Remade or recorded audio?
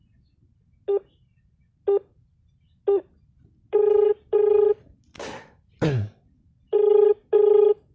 recorded